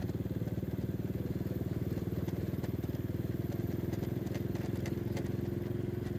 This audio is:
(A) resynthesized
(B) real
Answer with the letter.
B